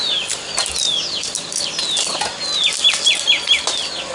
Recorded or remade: recorded